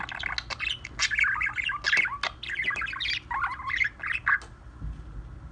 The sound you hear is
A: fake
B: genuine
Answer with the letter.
B